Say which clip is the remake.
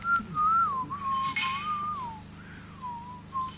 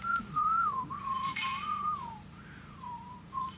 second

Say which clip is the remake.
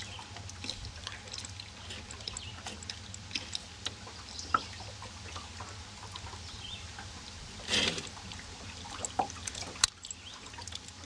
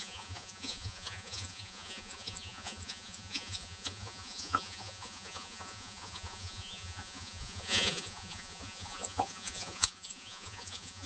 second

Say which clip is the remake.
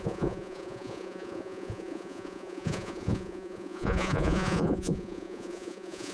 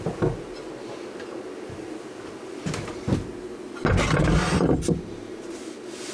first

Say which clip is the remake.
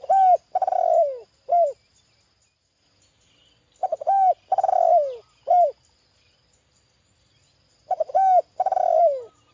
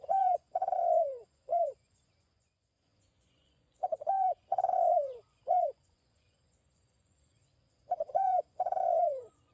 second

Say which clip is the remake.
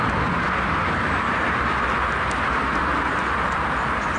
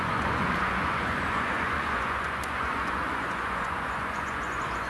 second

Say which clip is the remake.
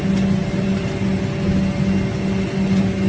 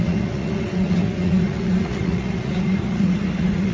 second